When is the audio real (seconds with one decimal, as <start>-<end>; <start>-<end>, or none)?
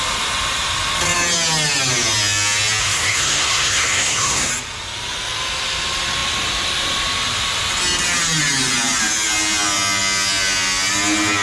0.0-2.8; 4.5-11.4